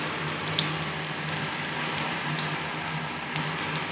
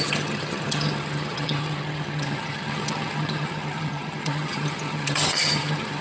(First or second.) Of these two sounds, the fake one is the second